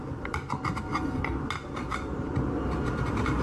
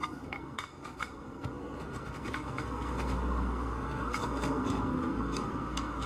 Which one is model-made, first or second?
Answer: second